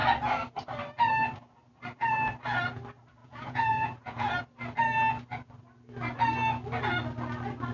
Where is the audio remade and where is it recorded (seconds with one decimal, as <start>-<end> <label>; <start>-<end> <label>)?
0.0-3.2 recorded; 3.2-4.4 remade; 4.4-7.7 recorded